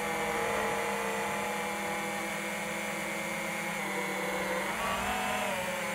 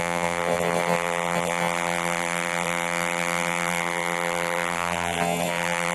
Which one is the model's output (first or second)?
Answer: second